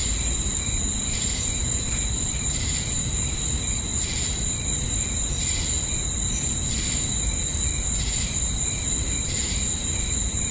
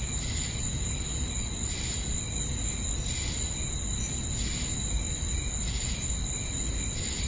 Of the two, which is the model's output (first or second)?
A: first